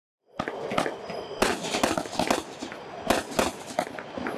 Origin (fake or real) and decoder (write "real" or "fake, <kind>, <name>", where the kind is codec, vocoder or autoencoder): real